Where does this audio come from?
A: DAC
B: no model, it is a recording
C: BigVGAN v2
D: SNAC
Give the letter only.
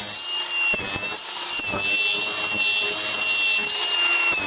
B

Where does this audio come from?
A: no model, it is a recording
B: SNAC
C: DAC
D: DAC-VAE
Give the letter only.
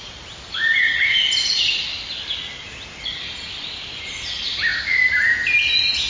A